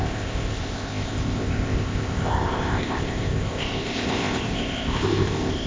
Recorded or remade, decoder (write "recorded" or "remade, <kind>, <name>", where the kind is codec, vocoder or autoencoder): remade, codec, ZipCodec